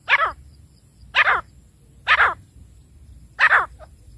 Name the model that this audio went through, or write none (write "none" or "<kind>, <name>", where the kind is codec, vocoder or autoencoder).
none